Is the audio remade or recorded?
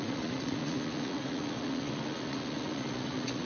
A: remade